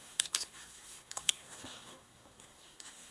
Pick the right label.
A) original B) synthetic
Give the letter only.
B